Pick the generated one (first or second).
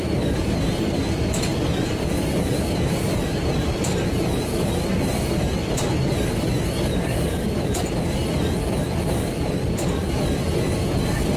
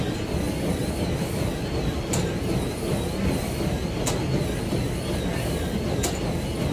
first